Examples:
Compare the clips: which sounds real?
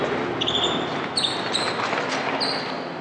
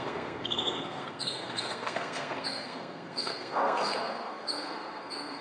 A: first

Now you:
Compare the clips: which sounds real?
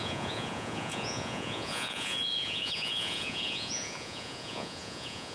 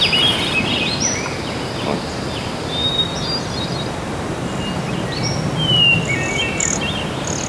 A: second